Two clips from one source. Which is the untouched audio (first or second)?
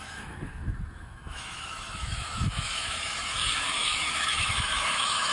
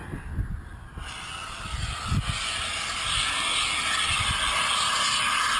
second